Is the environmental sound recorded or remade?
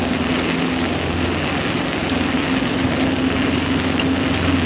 recorded